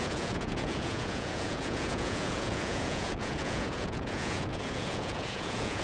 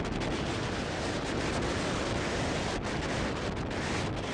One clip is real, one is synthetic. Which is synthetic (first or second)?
first